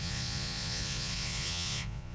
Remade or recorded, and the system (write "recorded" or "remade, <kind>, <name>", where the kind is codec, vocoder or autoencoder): remade, vocoder, Vocos